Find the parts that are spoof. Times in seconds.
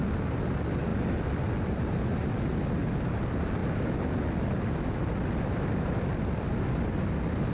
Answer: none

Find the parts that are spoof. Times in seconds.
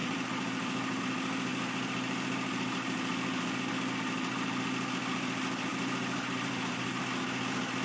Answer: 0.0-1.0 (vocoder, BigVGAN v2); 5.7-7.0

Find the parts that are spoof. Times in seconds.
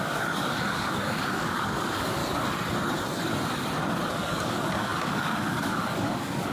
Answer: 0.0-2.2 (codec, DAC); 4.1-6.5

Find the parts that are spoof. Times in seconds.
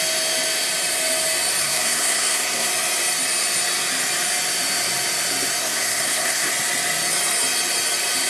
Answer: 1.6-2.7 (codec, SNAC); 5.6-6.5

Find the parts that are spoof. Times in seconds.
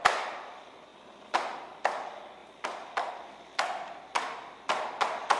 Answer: none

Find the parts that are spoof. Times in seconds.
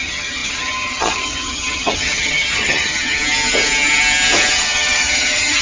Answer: 0.0-3.2 (vocoder, HiFi-GAN); 4.5-5.6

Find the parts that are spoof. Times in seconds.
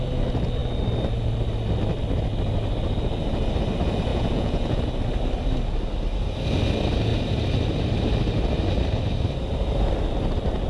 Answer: 4.1-4.8 (vocoder, Vocos)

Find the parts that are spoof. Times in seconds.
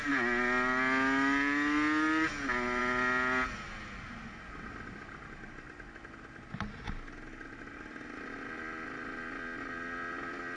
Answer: none